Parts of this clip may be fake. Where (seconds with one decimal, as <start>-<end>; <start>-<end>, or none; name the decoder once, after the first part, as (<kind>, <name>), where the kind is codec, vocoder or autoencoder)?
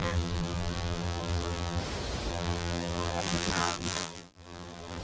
0.0-1.8 (vocoder, BigVGAN v2); 2.3-5.0